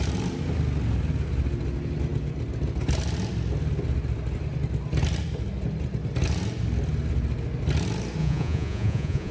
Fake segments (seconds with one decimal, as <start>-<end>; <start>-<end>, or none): 8.2-9.3